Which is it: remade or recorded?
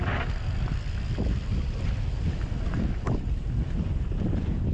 recorded